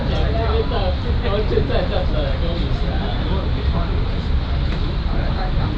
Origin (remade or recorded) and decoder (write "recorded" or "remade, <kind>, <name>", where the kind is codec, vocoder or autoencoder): recorded